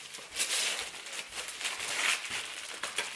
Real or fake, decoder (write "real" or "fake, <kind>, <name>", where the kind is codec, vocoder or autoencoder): real